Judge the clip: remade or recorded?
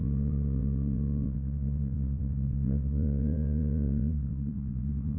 remade